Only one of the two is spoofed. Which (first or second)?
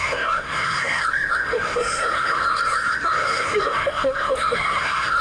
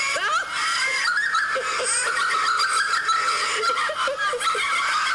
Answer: first